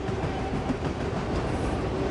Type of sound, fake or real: fake